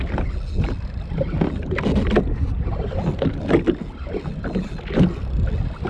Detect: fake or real real